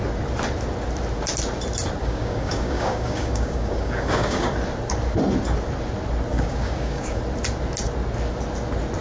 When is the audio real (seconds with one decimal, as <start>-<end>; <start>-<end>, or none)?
0.0-2.0; 4.5-6.3; 7.2-9.0